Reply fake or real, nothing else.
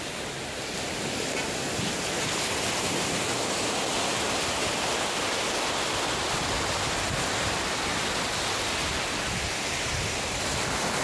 real